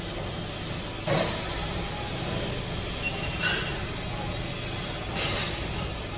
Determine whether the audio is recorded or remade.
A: recorded